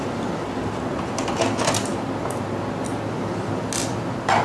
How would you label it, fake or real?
real